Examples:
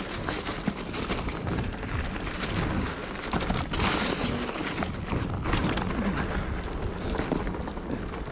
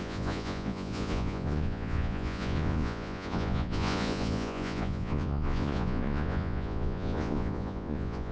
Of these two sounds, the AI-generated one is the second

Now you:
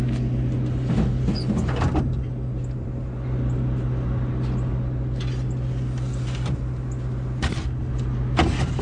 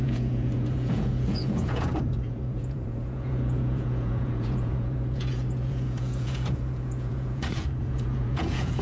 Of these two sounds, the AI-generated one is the second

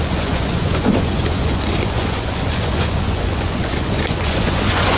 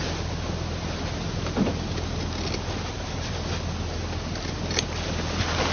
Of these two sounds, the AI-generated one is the first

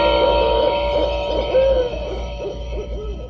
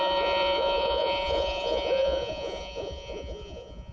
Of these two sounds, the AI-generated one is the second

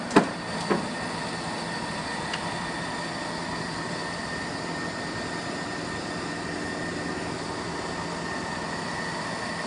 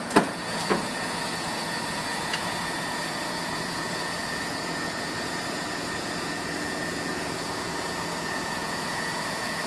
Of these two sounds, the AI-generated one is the second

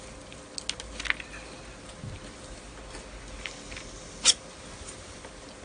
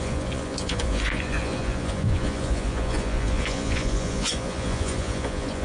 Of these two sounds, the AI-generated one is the second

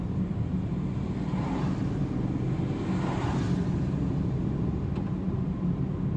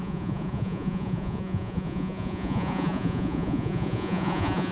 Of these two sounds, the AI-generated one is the second